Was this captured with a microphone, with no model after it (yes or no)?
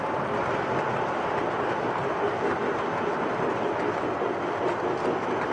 yes